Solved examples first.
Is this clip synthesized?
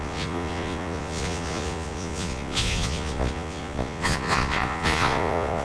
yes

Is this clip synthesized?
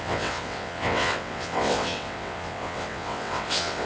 yes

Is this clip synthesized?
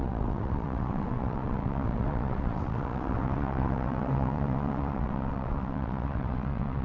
yes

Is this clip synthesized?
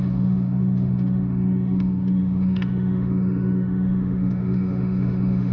yes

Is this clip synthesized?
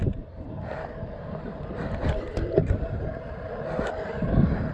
no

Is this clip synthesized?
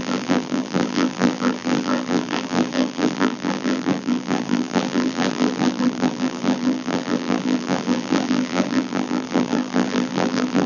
yes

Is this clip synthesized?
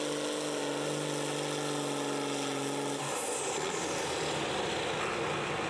no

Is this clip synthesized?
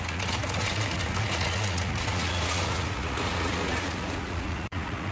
yes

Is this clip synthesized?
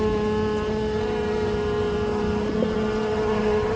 no